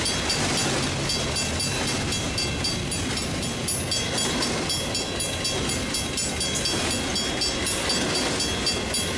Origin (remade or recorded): recorded